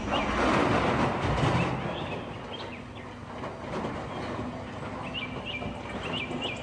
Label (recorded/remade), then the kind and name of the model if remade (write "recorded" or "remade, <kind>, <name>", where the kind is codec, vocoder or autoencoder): recorded